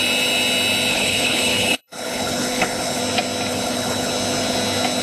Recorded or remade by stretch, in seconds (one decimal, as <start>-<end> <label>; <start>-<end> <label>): 0.0-0.9 recorded; 0.9-3.0 remade; 3.0-3.5 recorded; 3.5-4.1 remade; 4.1-5.0 recorded